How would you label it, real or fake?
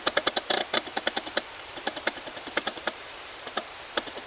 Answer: fake